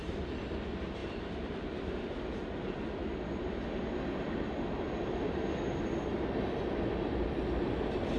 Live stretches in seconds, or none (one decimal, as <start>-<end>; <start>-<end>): 0.0-8.2